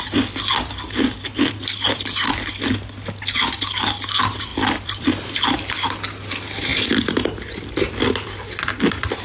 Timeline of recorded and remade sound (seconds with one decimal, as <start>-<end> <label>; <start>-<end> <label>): 0.0-4.5 recorded; 4.5-5.4 remade; 5.4-6.7 recorded; 6.7-8.1 remade; 8.1-9.2 recorded